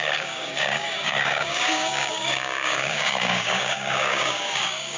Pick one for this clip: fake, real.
fake